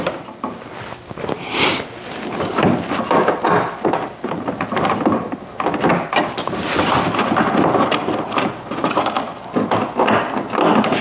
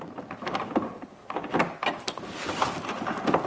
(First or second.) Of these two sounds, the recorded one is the first